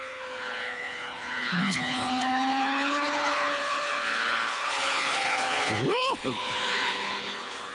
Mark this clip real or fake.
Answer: fake